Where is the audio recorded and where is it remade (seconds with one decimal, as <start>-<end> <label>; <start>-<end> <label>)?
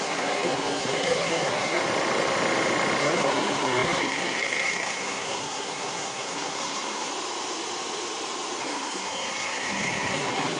0.0-1.8 remade; 1.8-3.0 recorded; 3.0-7.1 remade; 7.1-8.6 recorded; 8.6-10.6 remade